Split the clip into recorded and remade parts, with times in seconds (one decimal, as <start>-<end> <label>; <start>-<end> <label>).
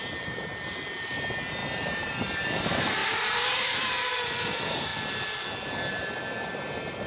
0.0-4.9 remade; 4.9-5.9 recorded; 5.9-7.1 remade